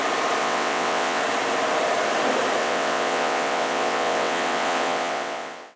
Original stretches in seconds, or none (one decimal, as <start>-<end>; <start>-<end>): 0.0-0.4; 1.2-2.6